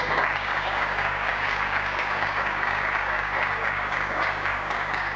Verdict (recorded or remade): remade